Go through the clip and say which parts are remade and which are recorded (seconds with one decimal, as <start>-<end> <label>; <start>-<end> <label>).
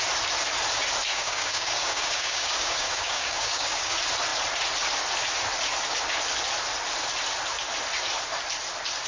0.0-1.1 recorded; 1.1-3.9 remade; 3.9-9.1 recorded